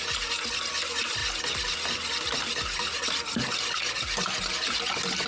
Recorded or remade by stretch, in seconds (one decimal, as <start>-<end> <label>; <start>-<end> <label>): 0.0-5.3 recorded